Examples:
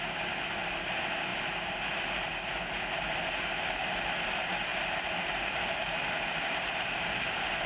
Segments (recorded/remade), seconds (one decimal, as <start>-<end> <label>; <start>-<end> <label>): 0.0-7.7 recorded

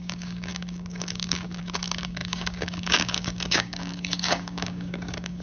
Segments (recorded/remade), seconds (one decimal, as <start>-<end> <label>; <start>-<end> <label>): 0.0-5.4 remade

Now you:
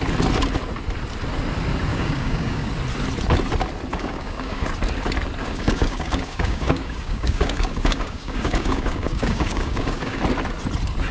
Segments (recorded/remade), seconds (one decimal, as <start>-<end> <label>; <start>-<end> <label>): 0.0-1.9 recorded; 1.9-2.7 remade; 2.7-3.9 recorded; 3.9-4.7 remade; 4.7-5.4 recorded; 5.4-10.2 remade; 10.2-11.1 recorded

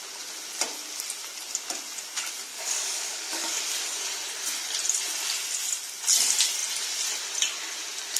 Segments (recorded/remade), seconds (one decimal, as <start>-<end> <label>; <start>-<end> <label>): 0.0-2.5 recorded; 2.5-3.6 remade; 3.6-8.2 recorded